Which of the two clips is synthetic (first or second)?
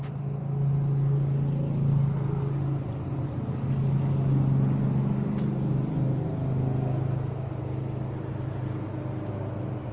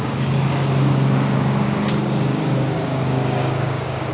second